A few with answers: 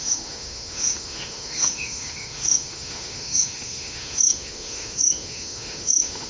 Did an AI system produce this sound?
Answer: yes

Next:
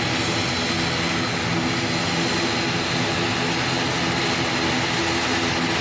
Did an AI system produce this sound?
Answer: no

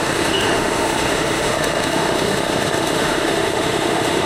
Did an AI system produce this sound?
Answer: yes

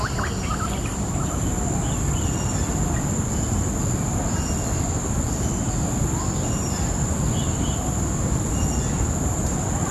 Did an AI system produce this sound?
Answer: no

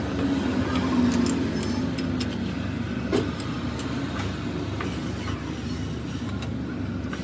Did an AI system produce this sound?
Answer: no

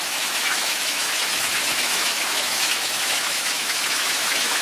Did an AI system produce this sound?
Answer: yes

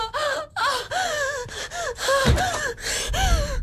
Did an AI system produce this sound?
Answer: no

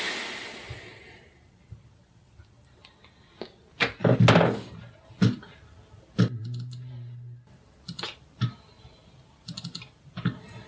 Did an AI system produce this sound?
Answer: no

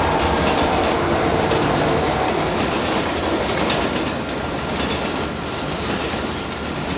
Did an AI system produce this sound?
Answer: no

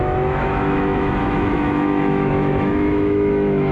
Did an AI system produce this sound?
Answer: yes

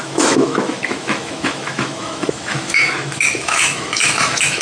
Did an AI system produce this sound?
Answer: yes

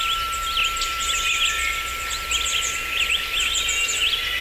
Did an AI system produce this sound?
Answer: no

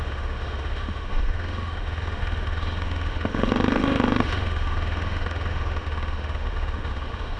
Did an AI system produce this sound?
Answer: yes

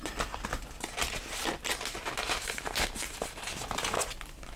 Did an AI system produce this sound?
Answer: no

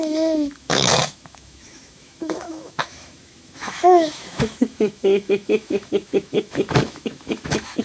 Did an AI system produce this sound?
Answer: yes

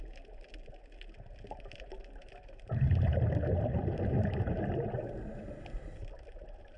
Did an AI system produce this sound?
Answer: no